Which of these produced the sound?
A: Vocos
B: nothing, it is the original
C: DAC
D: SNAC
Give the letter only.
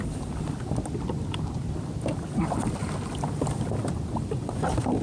B